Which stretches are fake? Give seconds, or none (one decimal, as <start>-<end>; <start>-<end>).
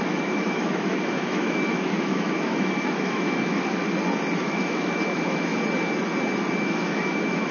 0.0-3.8; 4.4-5.5; 6.5-7.5